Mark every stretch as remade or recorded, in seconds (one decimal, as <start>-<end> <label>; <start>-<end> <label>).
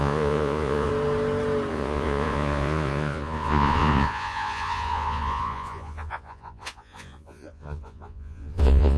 0.0-0.9 remade; 0.9-1.7 recorded; 1.7-9.0 remade